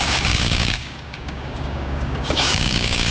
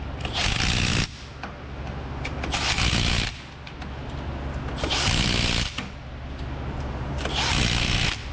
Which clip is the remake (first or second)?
first